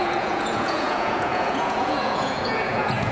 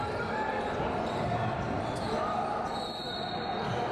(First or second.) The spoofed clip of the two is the first